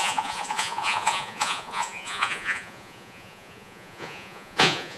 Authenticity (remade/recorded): remade